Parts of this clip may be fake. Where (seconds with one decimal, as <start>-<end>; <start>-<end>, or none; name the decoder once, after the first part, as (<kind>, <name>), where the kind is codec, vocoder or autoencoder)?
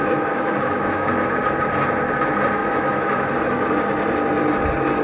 0.0-1.1 (autoencoder, DAC-VAE); 2.6-3.4